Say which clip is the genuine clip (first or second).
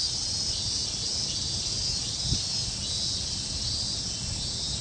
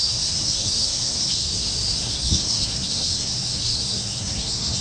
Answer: first